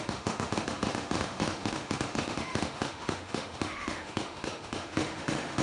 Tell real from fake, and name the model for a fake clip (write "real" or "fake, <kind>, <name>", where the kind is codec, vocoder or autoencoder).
fake, autoencoder, DAC-VAE